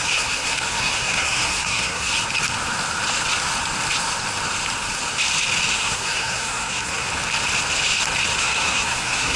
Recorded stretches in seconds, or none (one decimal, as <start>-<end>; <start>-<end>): 2.1-5.7; 7.1-8.4